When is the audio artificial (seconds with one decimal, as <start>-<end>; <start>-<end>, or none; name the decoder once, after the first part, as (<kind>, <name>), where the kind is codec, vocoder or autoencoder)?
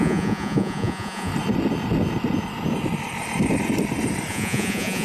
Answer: 0.0-1.3 (vocoder, Vocos); 4.3-5.0